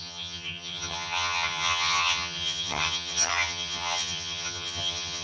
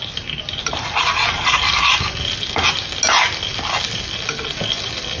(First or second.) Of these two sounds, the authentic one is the second